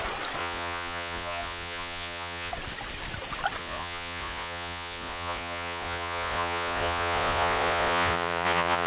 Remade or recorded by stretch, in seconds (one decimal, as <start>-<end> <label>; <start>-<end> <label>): 0.0-0.4 recorded; 0.4-2.5 remade; 2.5-3.6 recorded; 3.6-8.9 remade